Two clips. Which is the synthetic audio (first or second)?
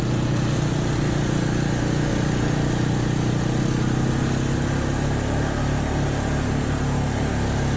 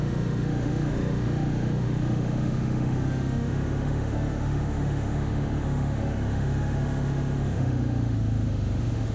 second